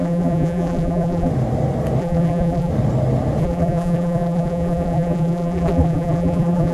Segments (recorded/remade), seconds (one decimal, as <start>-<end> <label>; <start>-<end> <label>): 0.0-1.3 remade; 1.3-2.0 recorded; 2.0-2.7 remade; 2.7-3.4 recorded; 3.4-6.7 remade